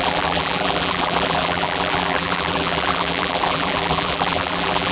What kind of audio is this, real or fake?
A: fake